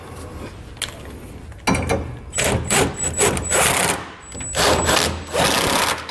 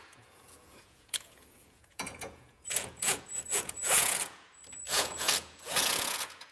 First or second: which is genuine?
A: first